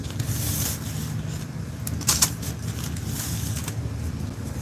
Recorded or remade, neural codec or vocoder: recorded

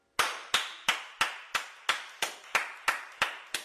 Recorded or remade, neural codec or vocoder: recorded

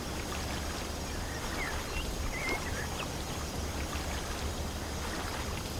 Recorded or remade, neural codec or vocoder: recorded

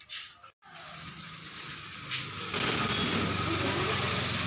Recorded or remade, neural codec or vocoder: recorded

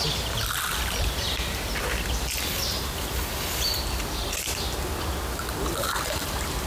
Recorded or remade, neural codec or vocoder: recorded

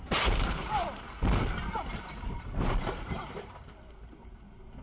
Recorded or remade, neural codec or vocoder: remade, vocoder, BigVGAN v2